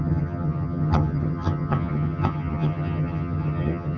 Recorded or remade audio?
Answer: remade